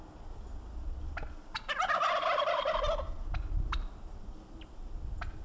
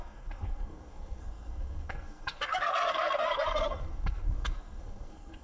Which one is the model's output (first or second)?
second